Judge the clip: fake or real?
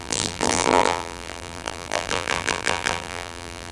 fake